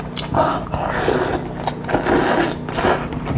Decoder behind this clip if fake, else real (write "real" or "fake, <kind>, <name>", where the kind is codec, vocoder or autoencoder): real